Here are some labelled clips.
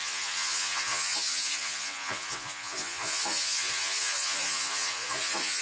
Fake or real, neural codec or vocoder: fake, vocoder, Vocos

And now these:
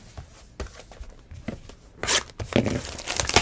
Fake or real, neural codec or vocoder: real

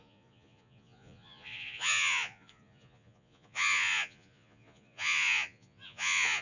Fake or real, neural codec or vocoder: fake, vocoder, Vocos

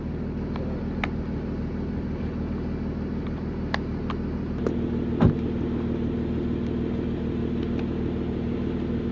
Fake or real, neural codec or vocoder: real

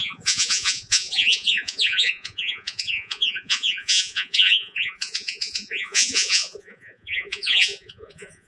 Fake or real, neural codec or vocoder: fake, vocoder, Vocos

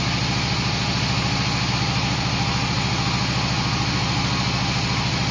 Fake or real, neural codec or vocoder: real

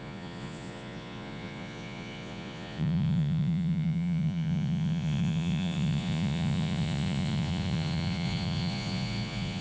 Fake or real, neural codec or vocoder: fake, vocoder, Vocos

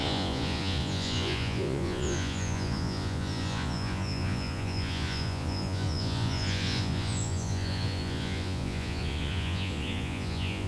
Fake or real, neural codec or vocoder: fake, vocoder, Vocos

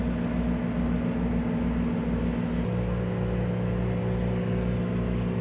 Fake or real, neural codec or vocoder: real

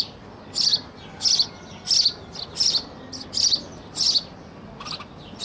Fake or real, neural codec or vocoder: real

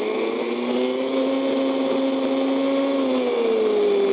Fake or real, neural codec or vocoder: real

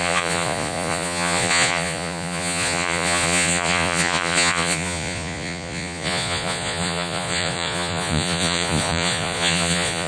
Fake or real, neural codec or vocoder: fake, vocoder, Vocos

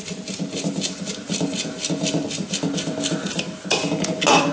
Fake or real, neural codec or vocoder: real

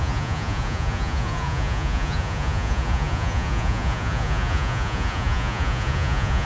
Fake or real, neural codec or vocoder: fake, vocoder, Vocos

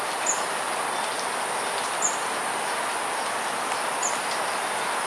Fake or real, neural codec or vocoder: real